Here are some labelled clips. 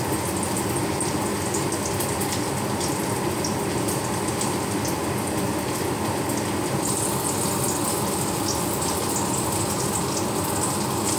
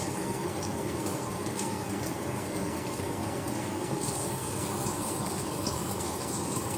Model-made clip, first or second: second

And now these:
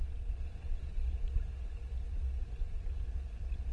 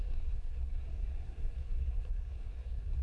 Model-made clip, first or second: second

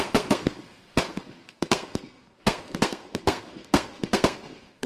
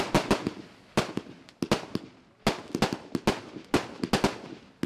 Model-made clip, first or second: first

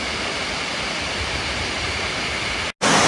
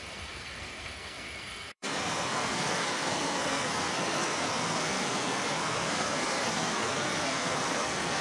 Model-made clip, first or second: second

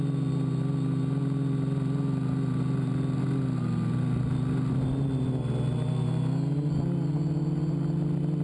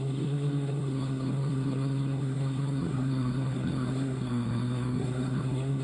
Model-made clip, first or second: second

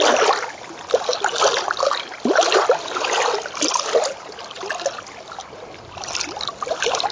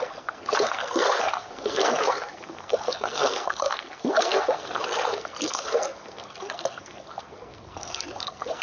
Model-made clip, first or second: second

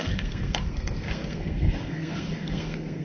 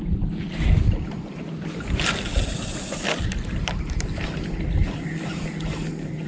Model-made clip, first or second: first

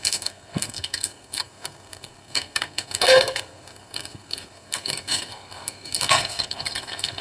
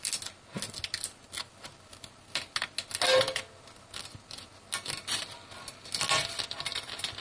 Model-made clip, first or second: first